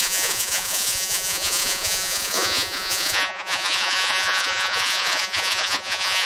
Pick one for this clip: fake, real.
fake